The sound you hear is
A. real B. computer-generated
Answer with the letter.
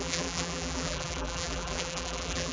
B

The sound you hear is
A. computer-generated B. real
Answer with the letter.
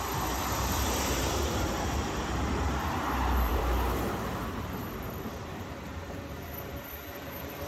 A